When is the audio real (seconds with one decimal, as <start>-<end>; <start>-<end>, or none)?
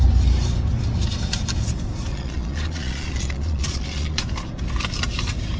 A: 0.0-2.1; 4.2-5.6